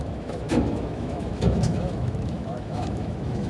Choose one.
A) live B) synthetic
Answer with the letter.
B